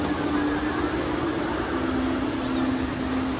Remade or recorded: recorded